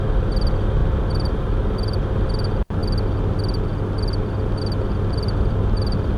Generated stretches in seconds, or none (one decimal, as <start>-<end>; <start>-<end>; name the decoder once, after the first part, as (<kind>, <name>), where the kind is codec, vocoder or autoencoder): none